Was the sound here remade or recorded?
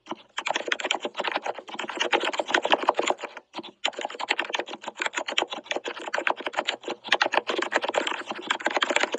recorded